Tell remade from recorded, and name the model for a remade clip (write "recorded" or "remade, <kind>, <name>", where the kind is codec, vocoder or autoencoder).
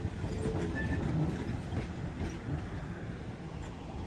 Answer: recorded